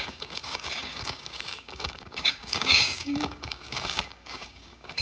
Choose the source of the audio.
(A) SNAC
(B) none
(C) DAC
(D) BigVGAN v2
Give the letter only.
C